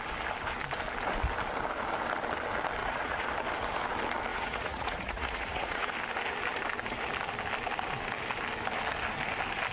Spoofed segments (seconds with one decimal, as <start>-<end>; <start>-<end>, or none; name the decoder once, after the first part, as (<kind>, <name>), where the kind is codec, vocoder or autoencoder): 2.8-3.3 (vocoder, Vocos); 4.3-5.9